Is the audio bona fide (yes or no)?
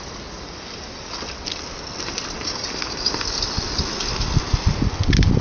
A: yes